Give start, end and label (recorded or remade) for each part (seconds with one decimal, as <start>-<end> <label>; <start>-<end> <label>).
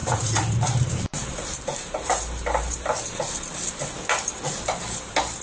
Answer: 0.0-3.2 remade; 3.2-5.4 recorded